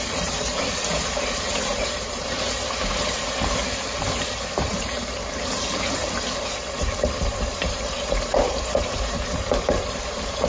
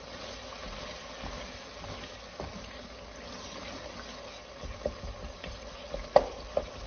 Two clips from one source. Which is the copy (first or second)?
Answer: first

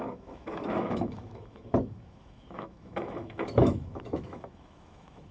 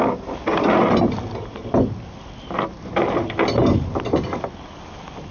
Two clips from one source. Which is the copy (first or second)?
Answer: first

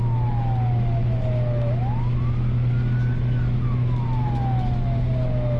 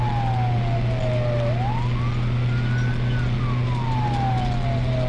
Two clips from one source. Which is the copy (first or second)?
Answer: first